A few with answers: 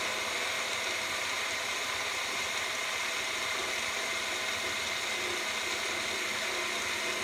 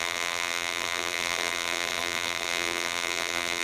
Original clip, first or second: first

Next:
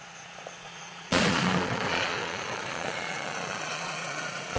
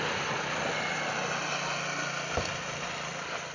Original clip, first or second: second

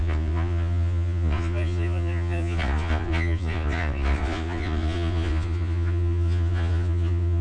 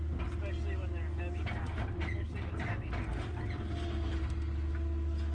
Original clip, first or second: second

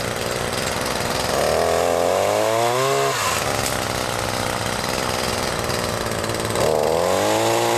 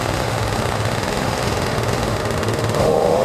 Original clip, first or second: first